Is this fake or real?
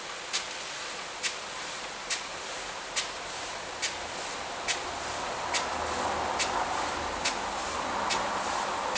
real